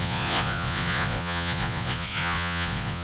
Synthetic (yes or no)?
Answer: yes